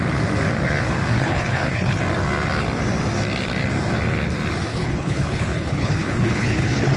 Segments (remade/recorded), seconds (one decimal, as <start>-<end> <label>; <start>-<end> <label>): 0.0-1.1 recorded; 1.1-2.0 remade; 2.0-4.7 recorded; 4.7-7.0 remade